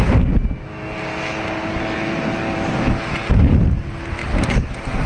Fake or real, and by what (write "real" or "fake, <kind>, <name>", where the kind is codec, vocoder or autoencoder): real